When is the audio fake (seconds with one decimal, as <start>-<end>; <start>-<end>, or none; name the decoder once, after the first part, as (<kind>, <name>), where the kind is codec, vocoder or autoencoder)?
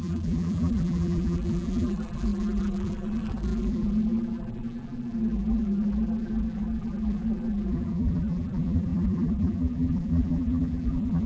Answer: 0.0-11.3 (vocoder, BigVGAN v2)